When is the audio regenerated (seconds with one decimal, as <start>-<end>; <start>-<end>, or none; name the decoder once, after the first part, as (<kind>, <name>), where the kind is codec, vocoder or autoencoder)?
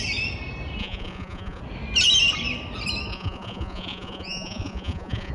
0.8-1.6 (vocoder, Vocos); 3.1-5.3